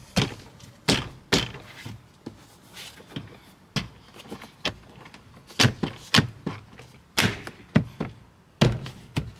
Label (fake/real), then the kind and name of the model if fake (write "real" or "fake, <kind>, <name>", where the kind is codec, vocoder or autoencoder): real